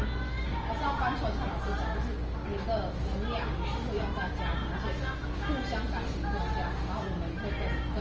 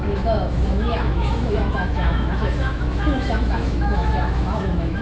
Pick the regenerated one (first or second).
second